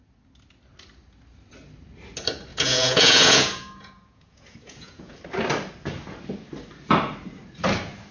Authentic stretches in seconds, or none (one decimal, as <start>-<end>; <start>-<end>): 0.0-2.5; 5.2-8.1